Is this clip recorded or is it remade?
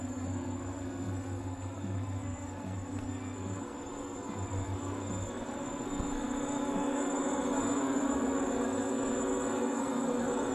remade